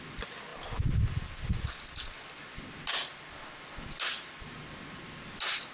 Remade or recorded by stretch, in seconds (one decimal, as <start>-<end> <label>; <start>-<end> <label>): 0.0-5.7 recorded